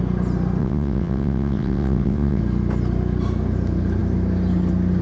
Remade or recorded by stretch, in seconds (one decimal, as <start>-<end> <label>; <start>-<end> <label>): 0.0-0.6 recorded; 0.6-2.4 remade; 2.4-5.0 recorded